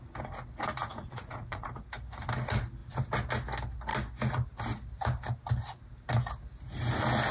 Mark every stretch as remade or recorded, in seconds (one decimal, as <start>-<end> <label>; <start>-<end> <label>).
0.0-0.8 recorded; 0.8-1.7 remade; 1.7-7.3 recorded